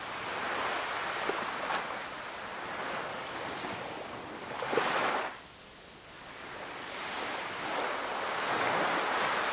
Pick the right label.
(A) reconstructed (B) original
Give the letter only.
B